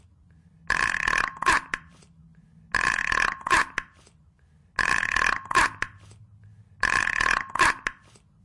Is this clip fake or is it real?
real